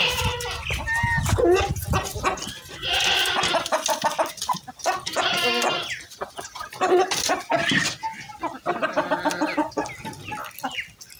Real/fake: real